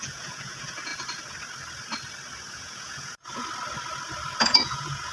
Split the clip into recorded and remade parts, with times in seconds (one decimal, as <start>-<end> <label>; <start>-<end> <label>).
0.0-0.9 remade; 0.9-2.5 recorded; 2.5-3.4 remade; 3.4-4.4 recorded; 4.4-5.1 remade